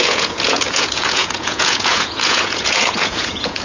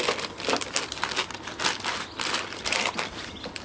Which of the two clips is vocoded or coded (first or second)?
first